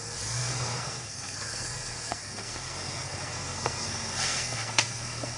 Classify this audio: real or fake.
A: fake